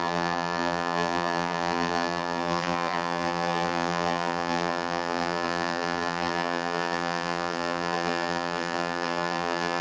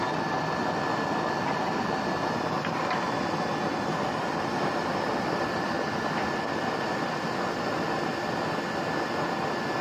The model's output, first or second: first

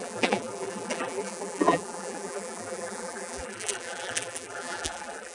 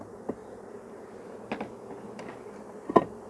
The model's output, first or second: first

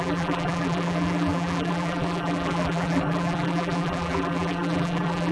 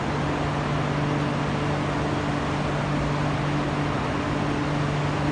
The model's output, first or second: first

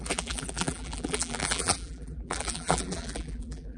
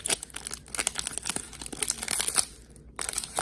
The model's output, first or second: first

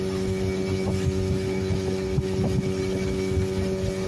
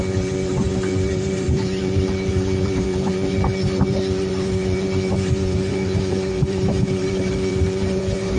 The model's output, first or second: second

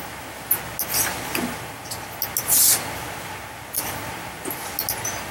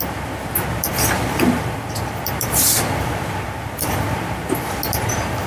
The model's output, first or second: second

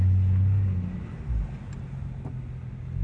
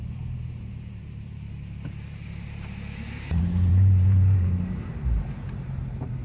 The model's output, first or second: second